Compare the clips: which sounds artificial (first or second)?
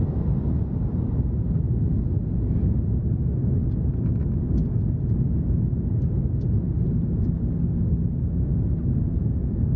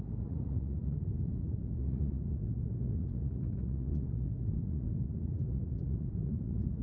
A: second